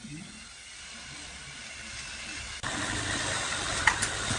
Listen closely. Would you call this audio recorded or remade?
recorded